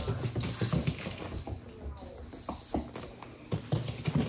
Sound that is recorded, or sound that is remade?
recorded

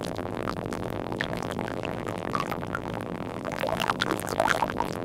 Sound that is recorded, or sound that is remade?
remade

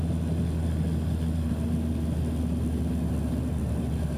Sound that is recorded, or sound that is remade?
recorded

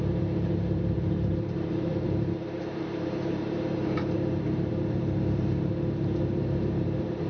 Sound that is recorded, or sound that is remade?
remade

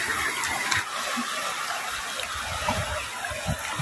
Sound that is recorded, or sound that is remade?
recorded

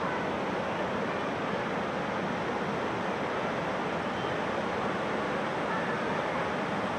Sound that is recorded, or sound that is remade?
recorded